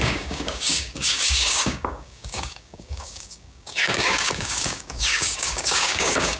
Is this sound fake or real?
fake